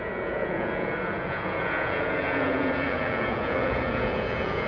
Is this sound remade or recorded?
remade